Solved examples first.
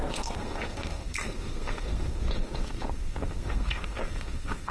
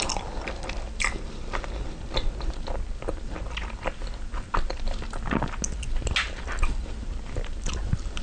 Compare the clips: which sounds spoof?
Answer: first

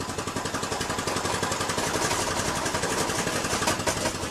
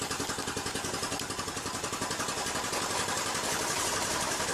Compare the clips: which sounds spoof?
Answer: second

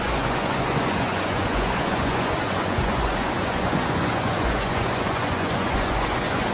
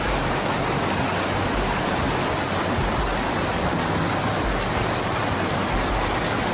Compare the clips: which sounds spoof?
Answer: first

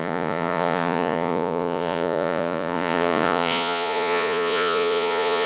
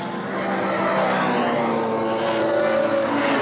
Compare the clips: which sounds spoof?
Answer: first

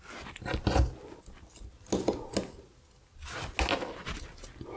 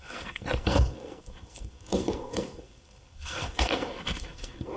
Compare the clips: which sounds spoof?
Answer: second